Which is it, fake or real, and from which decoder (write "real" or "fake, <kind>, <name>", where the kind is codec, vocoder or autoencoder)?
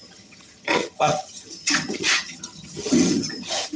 fake, vocoder, HiFi-GAN